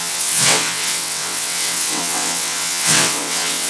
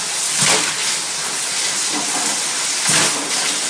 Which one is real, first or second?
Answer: second